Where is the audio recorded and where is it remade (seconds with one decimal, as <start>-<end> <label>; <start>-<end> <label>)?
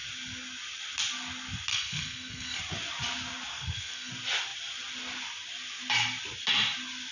0.0-1.7 recorded; 1.7-2.6 remade; 2.6-3.5 recorded; 3.5-4.1 remade; 4.1-7.1 recorded